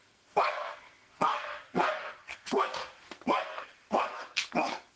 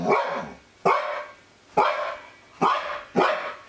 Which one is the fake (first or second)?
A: first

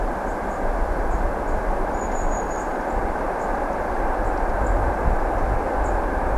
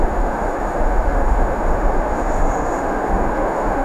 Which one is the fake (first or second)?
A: second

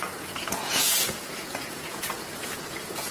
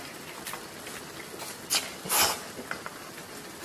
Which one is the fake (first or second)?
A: first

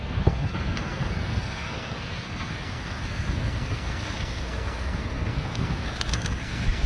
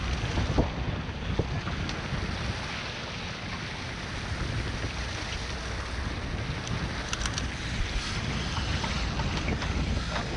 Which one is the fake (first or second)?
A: first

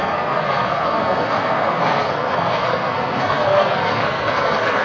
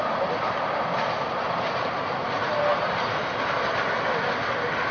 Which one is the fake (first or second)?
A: first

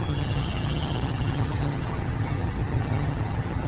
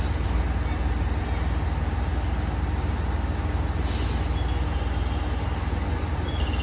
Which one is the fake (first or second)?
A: first